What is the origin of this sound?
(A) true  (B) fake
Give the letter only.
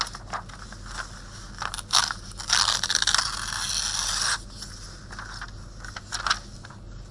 A